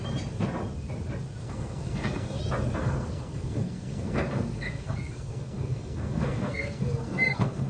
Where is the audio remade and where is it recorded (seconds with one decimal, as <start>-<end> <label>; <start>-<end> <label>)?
0.0-1.4 recorded; 1.4-2.4 remade; 2.4-2.8 recorded; 2.8-7.7 remade